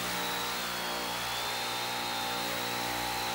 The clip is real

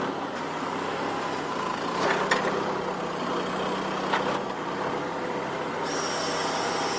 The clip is real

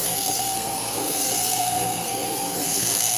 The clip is fake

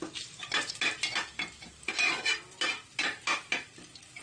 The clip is real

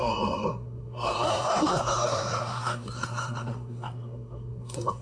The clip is fake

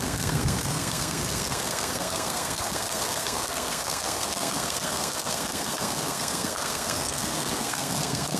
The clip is fake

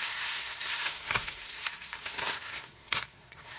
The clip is fake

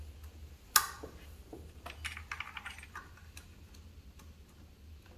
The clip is real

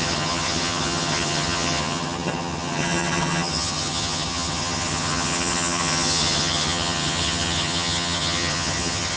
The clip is fake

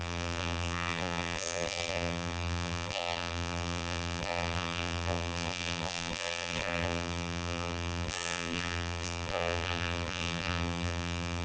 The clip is fake